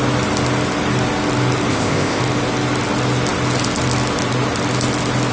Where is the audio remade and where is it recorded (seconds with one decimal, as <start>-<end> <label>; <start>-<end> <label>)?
0.0-1.7 recorded; 1.7-2.2 remade; 2.2-5.3 recorded

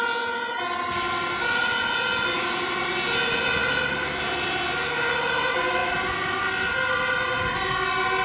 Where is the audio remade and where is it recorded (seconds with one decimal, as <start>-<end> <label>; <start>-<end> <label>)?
0.0-8.2 recorded

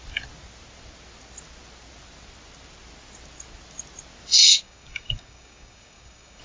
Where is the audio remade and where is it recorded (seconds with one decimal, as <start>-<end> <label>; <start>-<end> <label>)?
0.0-4.5 recorded; 4.5-6.4 remade

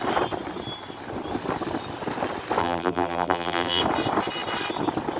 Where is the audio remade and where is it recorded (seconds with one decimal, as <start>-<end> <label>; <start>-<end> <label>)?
0.0-2.6 recorded; 2.6-3.8 remade; 3.8-5.2 recorded